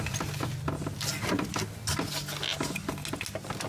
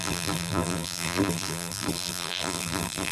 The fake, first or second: second